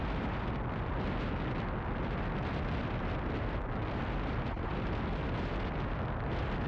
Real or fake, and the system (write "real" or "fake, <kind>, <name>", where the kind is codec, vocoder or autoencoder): real